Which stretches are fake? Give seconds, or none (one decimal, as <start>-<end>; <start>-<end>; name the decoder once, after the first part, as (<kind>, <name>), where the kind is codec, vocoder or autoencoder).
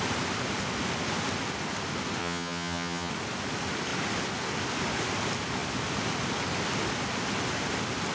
2.2-3.1 (vocoder, HiFi-GAN)